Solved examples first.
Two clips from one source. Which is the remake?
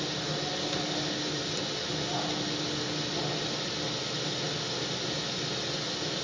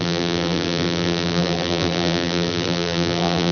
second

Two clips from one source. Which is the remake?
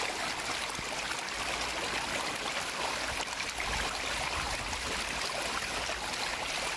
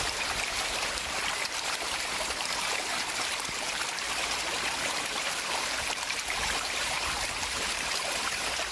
second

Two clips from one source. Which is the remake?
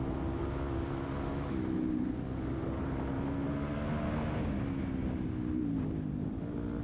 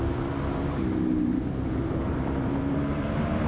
second